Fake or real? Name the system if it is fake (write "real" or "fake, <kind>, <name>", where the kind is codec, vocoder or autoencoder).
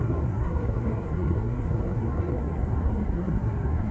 fake, codec, SNAC